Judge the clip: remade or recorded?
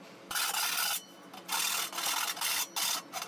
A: recorded